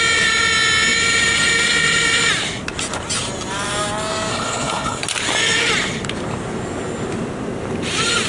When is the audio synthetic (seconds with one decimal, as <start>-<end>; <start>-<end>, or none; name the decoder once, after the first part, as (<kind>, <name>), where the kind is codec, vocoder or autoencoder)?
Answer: 4.3-5.0 (codec, HILCodec)